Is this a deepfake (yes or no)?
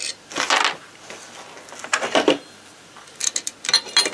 no